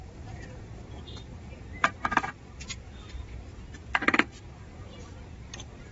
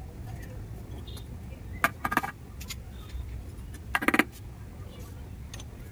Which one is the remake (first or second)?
first